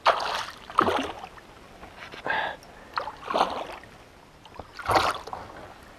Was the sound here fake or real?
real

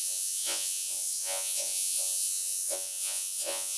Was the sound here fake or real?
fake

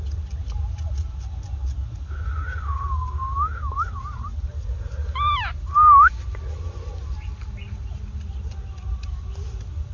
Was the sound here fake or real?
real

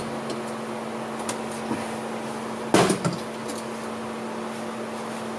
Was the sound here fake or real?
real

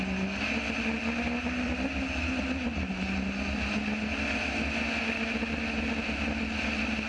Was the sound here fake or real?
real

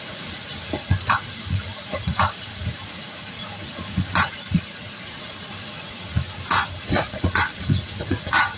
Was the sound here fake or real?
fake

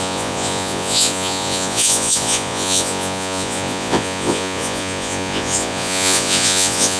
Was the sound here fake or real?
fake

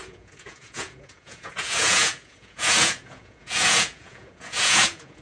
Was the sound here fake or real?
fake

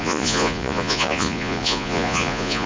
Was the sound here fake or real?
fake